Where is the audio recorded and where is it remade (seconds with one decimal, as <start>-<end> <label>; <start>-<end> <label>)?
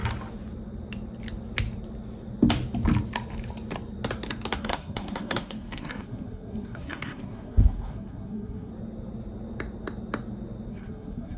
0.0-4.6 recorded; 4.6-8.7 remade; 8.7-10.7 recorded; 10.7-11.4 remade